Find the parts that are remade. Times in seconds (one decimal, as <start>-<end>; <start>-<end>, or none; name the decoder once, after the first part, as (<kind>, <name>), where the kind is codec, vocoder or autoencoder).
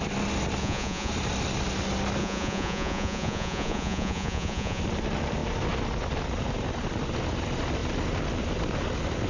0.6-1.1 (vocoder, Vocos); 2.2-4.8